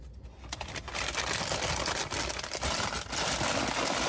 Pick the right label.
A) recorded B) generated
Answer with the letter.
A